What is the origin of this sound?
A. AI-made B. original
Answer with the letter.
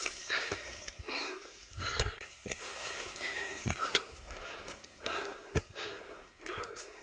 A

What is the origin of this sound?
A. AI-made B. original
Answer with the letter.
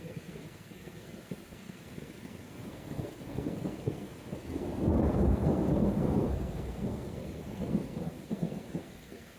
A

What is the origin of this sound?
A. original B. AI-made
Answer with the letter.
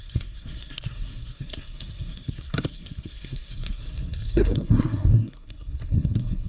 B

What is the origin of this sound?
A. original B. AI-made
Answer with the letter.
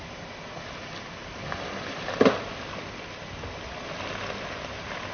A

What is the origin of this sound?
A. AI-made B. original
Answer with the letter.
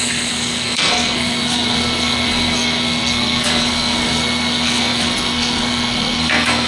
A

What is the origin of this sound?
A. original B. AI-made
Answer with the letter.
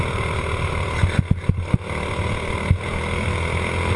A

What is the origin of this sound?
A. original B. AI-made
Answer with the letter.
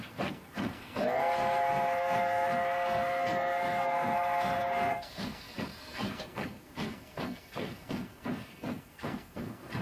B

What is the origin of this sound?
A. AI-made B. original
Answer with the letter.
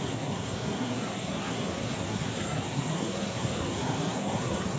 A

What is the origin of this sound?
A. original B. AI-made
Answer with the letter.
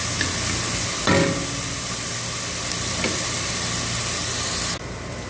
A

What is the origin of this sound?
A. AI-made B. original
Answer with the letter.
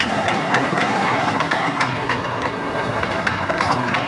A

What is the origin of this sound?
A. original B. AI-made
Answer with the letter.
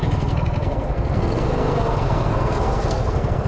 B